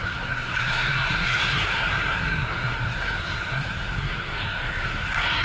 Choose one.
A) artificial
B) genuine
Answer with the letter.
A